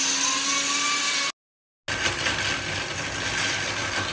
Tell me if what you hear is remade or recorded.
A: recorded